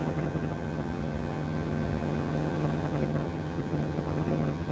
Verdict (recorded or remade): remade